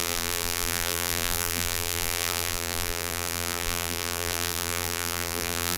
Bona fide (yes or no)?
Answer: no